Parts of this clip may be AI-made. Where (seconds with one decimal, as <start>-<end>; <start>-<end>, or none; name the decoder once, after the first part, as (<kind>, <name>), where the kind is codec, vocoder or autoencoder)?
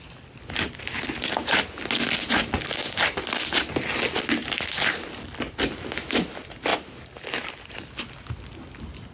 none